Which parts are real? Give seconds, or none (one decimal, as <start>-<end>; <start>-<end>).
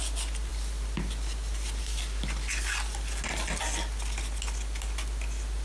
0.0-5.6